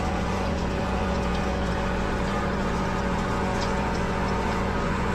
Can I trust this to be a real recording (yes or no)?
no